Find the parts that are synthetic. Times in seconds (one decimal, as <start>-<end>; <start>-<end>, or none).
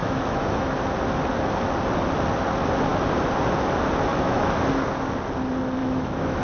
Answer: 0.0-0.7; 4.1-4.6; 5.8-6.4